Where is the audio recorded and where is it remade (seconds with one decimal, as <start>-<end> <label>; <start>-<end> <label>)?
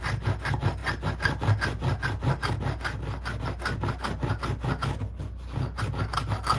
0.0-6.6 recorded